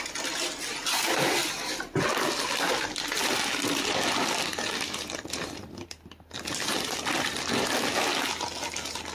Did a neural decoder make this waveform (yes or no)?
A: no